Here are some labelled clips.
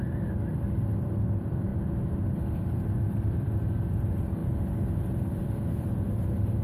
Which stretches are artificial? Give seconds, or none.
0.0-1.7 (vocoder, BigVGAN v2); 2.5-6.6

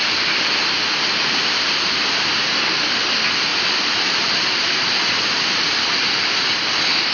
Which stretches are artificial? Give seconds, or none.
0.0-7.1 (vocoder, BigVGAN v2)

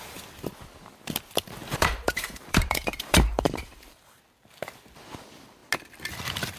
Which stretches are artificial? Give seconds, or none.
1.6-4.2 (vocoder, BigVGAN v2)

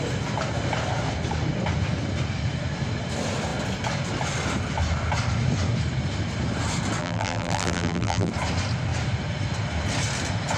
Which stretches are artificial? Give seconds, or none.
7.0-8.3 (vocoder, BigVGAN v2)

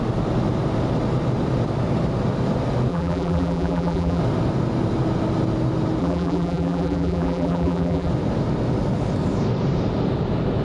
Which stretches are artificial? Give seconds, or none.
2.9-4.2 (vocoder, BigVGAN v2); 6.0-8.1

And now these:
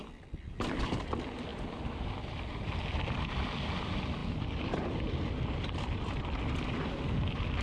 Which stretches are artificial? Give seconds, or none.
0.0-0.8 (vocoder, BigVGAN v2); 4.2-6.2